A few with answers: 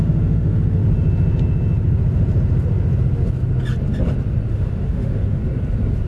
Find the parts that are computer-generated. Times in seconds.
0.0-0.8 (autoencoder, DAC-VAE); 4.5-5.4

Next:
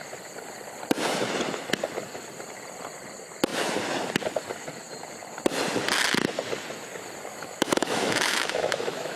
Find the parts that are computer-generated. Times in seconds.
7.3-9.2 (autoencoder, DAC-VAE)

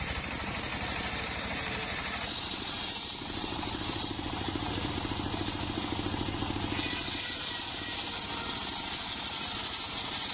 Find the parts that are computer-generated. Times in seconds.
0.7-4.9 (vocoder, BigVGAN v2)

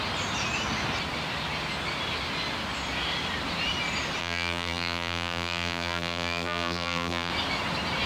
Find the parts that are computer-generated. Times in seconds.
4.2-7.3 (vocoder, BigVGAN v2)

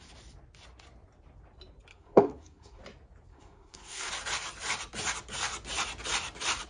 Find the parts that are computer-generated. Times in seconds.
1.9-2.8 (codec, SNAC); 3.3-4.1

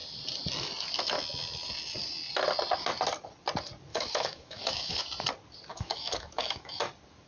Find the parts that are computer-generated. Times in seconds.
3.9-5.0 (autoencoder, DAC-VAE); 5.7-6.8

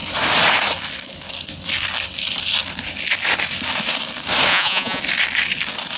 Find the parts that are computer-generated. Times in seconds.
4.5-5.0 (vocoder, Vocos)